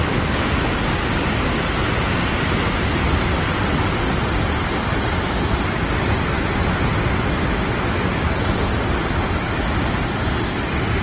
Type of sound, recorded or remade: recorded